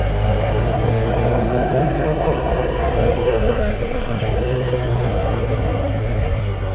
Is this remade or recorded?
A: remade